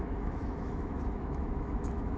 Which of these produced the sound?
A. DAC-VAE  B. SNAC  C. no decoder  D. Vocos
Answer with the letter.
A